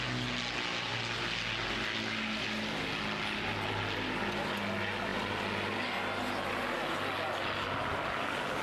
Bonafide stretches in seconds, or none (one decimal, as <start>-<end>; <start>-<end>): 0.0-8.6